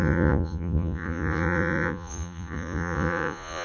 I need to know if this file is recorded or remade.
remade